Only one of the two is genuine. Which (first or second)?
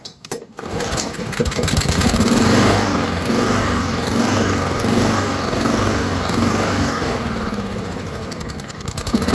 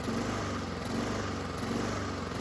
second